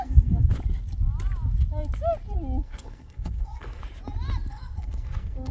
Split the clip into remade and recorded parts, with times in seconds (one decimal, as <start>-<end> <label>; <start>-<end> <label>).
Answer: 0.0-0.5 remade; 0.5-2.6 recorded; 2.6-3.8 remade; 3.8-4.5 recorded; 4.5-5.5 remade